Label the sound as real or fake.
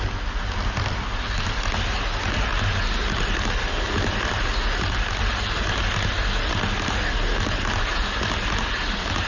real